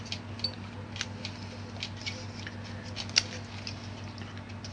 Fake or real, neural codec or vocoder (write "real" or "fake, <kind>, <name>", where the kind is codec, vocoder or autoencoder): real